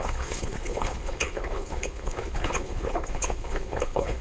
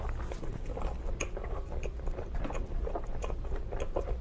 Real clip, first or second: second